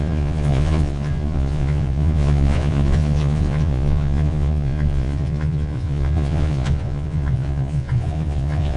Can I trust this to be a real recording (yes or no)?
no